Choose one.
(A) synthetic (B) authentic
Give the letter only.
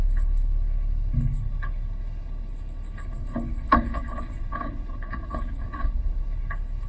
A